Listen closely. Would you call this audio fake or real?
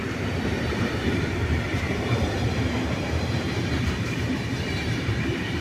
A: fake